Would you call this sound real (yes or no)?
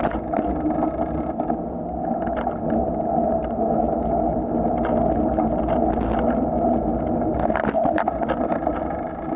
yes